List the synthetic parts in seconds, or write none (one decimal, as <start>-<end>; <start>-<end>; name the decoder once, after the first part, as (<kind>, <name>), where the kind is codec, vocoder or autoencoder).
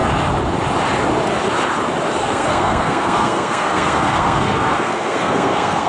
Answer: 2.2-5.9 (codec, SNAC)